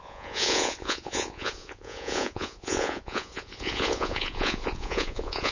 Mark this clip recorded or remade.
remade